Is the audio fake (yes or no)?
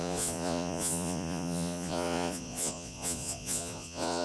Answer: yes